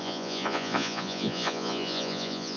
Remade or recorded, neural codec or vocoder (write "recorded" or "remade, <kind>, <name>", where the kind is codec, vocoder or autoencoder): remade, vocoder, Vocos